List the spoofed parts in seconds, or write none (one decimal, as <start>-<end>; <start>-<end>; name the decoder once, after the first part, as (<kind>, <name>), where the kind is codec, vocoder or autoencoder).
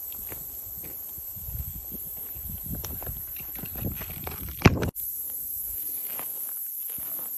0.0-6.0 (vocoder, BigVGAN v2)